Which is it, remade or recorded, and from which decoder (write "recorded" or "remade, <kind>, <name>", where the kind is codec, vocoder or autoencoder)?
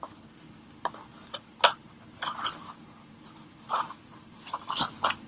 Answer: recorded